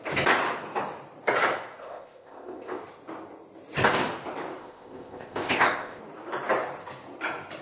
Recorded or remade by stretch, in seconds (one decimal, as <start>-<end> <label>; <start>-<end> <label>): 0.0-1.8 recorded; 1.8-2.8 remade; 2.8-4.6 recorded; 4.6-6.0 remade; 6.0-7.6 recorded